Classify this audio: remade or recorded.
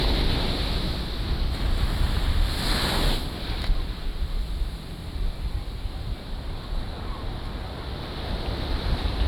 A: recorded